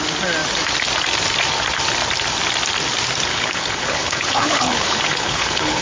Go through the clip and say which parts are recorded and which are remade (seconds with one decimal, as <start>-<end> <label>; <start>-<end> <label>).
0.0-3.3 recorded; 3.3-5.8 remade